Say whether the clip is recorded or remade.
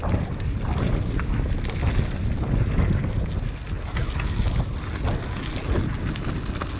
recorded